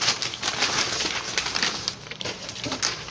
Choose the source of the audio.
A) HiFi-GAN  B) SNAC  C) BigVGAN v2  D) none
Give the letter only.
C